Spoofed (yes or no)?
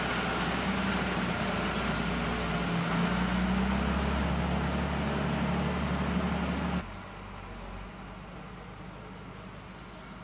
no